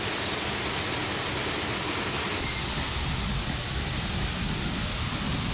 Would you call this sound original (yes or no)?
yes